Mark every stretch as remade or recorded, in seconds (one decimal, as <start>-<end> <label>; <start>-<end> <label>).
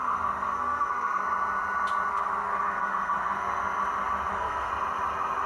0.0-1.2 remade; 1.2-2.1 recorded; 2.1-3.6 remade; 3.6-4.3 recorded; 4.3-4.7 remade; 4.7-5.5 recorded